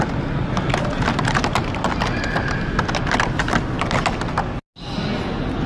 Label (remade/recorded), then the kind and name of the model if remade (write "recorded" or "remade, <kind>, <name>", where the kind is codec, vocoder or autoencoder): recorded